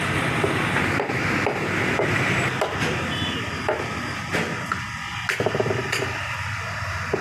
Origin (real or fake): real